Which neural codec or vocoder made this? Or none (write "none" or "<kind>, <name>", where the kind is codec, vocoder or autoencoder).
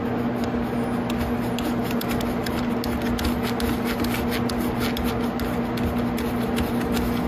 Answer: none